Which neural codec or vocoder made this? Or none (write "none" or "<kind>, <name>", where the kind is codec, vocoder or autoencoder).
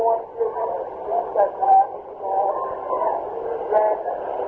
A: none